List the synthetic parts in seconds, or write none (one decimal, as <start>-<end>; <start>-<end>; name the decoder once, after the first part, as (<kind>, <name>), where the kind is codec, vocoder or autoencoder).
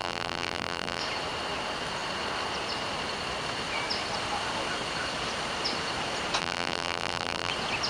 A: 0.0-1.0 (vocoder, BigVGAN v2); 6.4-7.5